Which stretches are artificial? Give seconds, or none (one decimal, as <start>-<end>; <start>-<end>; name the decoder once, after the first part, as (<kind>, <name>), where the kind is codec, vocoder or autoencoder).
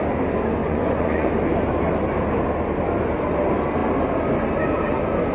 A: 0.6-1.3 (vocoder, Vocos)